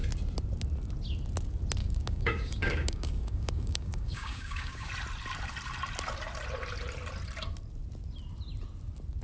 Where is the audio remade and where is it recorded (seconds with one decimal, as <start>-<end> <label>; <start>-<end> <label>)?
0.0-1.8 recorded; 1.8-4.9 remade; 4.9-9.2 recorded